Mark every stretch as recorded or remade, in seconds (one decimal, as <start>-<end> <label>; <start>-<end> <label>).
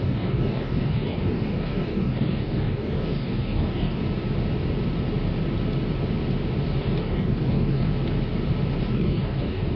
0.0-4.0 remade; 4.0-6.8 recorded; 6.8-7.9 remade; 7.9-8.8 recorded; 8.8-9.8 remade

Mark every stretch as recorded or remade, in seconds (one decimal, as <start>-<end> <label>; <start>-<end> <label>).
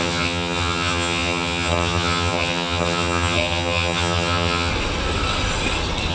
0.0-4.7 remade; 4.7-6.1 recorded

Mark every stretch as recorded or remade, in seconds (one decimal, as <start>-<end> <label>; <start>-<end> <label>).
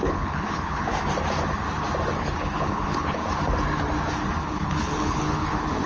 0.0-0.9 remade; 0.9-2.2 recorded; 2.2-3.2 remade; 3.2-4.4 recorded; 4.4-5.9 remade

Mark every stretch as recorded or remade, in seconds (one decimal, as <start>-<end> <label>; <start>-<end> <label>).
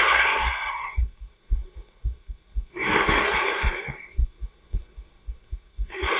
0.0-6.2 remade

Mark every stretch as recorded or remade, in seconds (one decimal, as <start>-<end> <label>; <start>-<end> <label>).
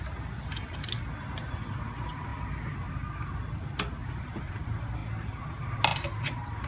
0.0-6.7 recorded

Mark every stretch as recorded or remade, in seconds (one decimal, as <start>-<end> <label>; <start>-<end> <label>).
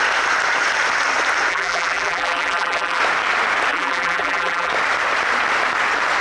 0.0-1.5 recorded; 1.5-3.0 remade; 3.0-3.7 recorded; 3.7-4.7 remade; 4.7-6.2 recorded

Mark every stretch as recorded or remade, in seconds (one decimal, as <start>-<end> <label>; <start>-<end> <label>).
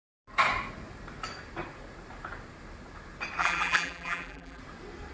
0.0-3.4 recorded; 3.4-4.6 remade; 4.6-5.1 recorded